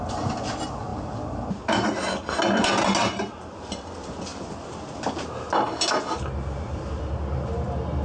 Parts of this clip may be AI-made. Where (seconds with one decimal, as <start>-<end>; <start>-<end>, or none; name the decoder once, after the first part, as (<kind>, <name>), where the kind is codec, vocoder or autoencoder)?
none